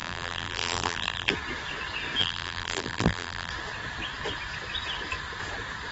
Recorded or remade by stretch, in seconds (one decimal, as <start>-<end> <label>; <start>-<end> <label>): 0.0-1.3 remade; 1.3-2.2 recorded; 2.2-3.5 remade; 3.5-5.9 recorded